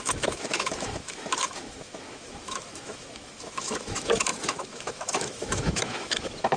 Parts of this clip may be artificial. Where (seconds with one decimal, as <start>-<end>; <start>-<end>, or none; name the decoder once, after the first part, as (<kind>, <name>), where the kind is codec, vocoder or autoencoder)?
0.0-6.6 (autoencoder, DAC-VAE)